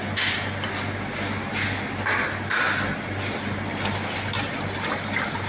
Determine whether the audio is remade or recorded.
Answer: recorded